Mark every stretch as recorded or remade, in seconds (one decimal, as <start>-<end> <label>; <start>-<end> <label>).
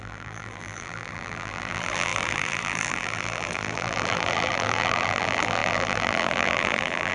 0.0-7.1 remade